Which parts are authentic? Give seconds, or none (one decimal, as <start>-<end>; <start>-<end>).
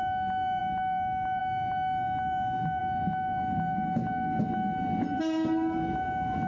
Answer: 0.0-6.5